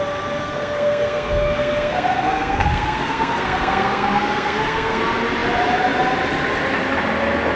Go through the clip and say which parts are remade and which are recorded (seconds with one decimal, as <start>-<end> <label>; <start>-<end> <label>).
0.0-0.4 recorded; 0.4-5.0 remade; 5.0-7.6 recorded